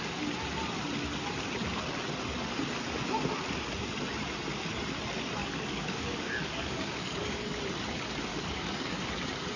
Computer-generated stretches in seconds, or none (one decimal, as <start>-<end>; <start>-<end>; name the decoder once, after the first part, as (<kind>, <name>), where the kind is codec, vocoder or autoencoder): 5.4-7.6 (codec, DAC); 8.3-8.9